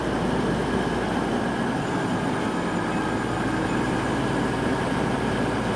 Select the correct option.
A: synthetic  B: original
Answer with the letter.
B